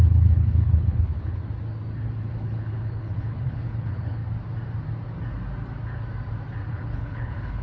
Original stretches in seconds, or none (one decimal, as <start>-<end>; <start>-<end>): 1.4-2.3; 4.2-6.7